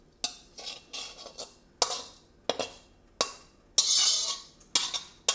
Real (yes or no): yes